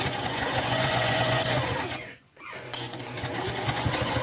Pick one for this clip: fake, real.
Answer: fake